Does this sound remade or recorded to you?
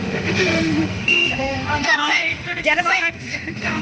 remade